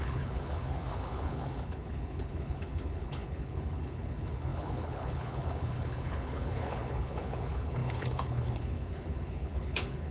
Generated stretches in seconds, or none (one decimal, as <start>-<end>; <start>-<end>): 0.0-10.1